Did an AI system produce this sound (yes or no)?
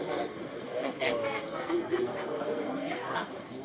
yes